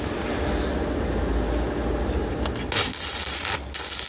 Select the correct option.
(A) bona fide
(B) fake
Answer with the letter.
A